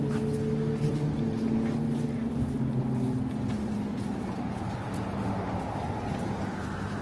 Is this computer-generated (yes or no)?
no